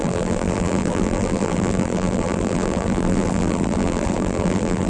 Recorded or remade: remade